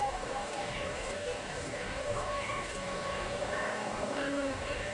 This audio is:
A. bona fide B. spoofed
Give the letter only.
B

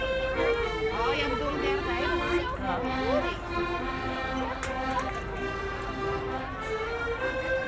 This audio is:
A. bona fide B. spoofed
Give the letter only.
A